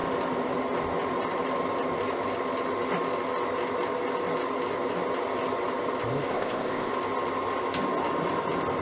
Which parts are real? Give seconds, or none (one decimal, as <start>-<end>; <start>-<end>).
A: 0.0-6.3; 6.9-8.8

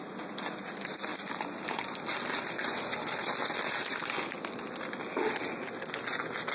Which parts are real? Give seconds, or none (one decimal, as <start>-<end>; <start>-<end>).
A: 0.0-0.9; 4.0-6.5

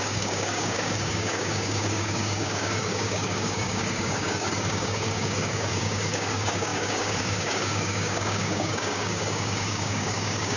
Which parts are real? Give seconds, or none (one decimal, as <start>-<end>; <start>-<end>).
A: none